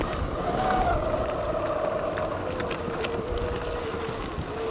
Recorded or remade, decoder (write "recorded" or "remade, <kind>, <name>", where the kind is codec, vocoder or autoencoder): recorded